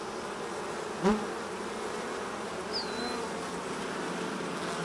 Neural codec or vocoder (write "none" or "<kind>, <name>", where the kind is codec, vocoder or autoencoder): none